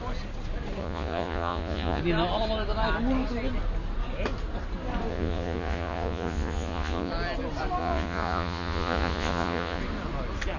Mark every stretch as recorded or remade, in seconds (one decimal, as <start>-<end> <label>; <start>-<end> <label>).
0.0-0.8 recorded; 0.8-2.0 remade; 2.0-5.1 recorded; 5.1-7.1 remade; 7.1-7.8 recorded; 7.8-9.8 remade; 9.8-10.6 recorded

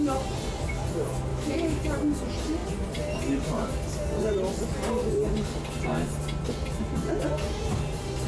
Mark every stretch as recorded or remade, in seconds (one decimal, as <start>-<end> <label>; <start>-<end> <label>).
0.0-1.3 recorded; 1.3-1.8 remade; 1.8-8.3 recorded

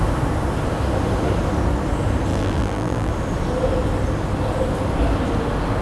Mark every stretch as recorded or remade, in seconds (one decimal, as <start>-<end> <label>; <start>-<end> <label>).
0.0-2.3 recorded; 2.3-3.1 remade; 3.1-5.8 recorded